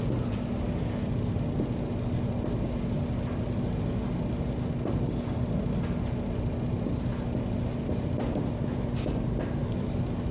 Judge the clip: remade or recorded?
recorded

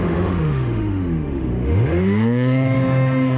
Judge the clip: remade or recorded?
remade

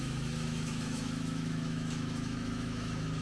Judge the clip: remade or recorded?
remade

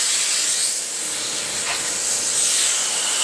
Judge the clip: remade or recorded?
recorded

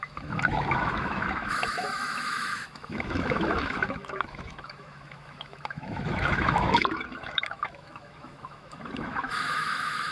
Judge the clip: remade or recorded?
remade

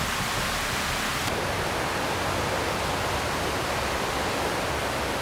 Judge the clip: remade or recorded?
recorded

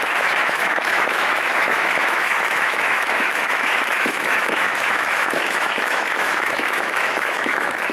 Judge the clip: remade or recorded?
remade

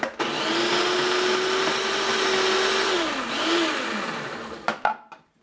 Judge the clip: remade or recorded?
recorded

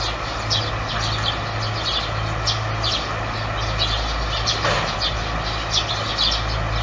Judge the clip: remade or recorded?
recorded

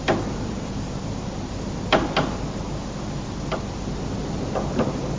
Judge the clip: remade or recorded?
recorded